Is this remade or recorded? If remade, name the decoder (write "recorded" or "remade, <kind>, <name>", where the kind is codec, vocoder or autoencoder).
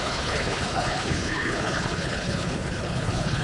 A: remade, codec, HILCodec